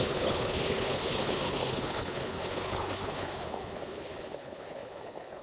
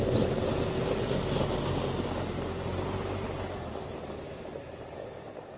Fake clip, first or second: first